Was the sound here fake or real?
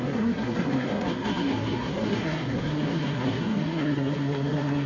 fake